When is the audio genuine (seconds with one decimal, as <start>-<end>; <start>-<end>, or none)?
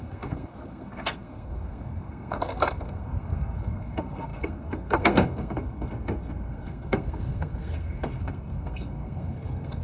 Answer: none